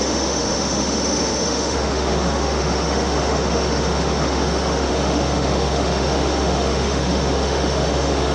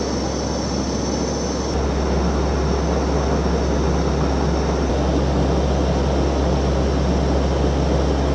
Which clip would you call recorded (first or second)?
second